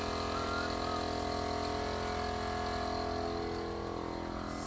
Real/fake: real